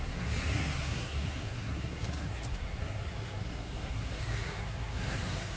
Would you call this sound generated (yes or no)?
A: yes